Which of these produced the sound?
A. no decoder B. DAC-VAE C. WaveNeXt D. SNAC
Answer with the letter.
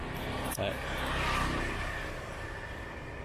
A